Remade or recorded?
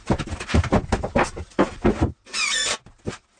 recorded